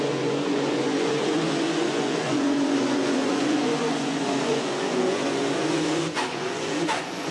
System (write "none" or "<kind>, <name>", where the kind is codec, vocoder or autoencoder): vocoder, Vocos